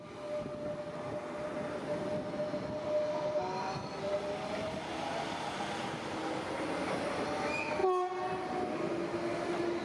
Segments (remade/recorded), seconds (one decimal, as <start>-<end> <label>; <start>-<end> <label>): 0.0-9.8 recorded